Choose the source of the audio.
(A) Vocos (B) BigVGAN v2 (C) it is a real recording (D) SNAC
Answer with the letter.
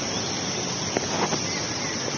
C